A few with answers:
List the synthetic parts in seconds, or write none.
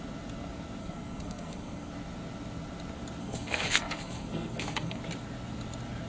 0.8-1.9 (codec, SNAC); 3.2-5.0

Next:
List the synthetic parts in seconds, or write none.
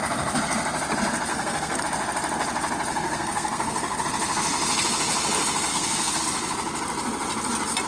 1.3-1.8 (codec, SNAC); 2.9-4.0; 5.7-6.2